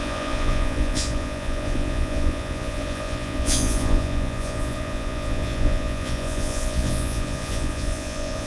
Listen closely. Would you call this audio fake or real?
fake